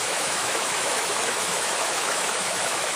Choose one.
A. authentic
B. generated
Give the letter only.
B